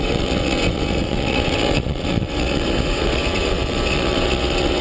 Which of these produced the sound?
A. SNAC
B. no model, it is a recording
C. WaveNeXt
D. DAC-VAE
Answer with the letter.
C